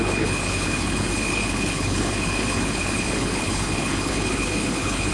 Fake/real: fake